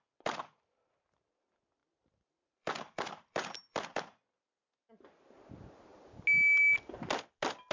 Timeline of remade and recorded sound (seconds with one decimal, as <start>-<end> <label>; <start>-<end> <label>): 0.0-1.8 recorded; 1.8-4.0 remade; 4.0-7.7 recorded